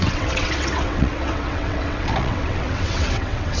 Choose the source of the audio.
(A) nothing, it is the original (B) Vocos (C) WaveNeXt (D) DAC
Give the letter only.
C